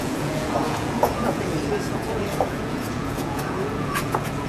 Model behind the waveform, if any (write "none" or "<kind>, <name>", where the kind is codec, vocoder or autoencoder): vocoder, Vocos